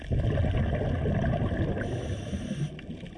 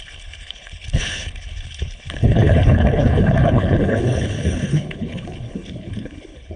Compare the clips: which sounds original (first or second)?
first